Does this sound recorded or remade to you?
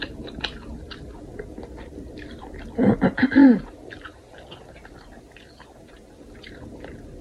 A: remade